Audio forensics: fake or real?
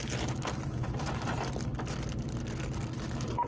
real